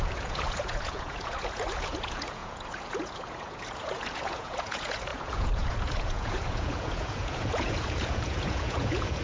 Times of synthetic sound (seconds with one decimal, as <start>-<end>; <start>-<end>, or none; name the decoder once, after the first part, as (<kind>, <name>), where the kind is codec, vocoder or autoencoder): 0.0-9.2 (vocoder, Vocos)